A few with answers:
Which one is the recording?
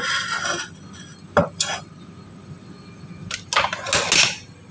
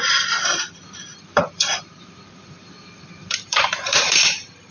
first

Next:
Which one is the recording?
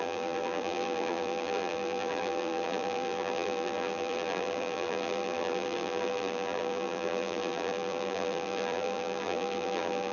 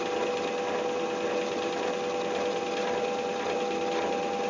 second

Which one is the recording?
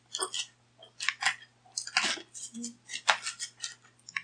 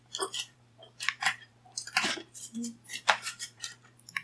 first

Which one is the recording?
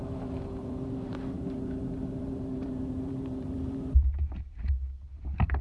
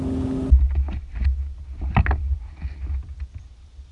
second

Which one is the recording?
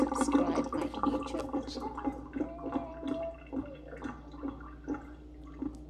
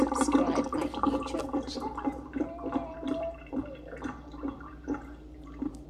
first